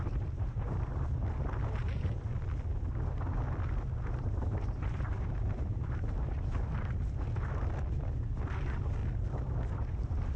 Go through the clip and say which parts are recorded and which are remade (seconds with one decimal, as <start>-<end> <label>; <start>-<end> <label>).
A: 0.0-2.3 remade; 2.3-4.0 recorded; 4.0-6.7 remade; 6.7-8.0 recorded; 8.0-9.0 remade; 9.0-9.7 recorded; 9.7-10.4 remade